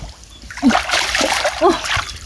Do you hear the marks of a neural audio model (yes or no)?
no